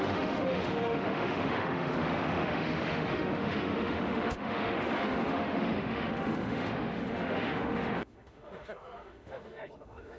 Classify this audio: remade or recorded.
remade